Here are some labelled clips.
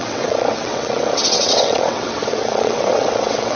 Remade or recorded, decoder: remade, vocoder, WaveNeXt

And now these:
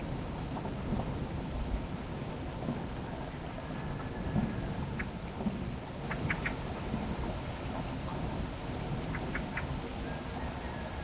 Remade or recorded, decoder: recorded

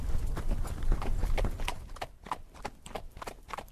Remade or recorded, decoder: recorded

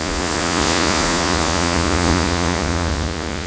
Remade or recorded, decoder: remade, vocoder, Vocos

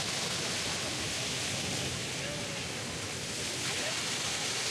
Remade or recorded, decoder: recorded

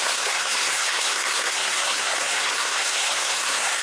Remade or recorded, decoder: remade, codec, SNAC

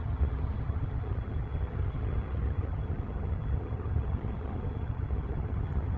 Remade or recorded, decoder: remade, vocoder, HiFi-GAN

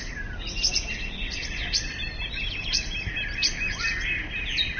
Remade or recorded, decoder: recorded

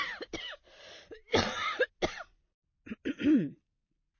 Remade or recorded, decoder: recorded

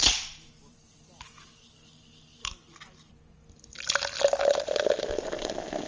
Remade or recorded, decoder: recorded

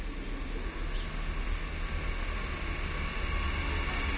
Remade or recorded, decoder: recorded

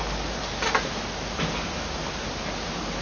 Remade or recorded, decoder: recorded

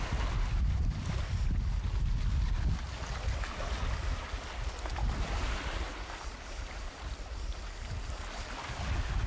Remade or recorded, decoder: recorded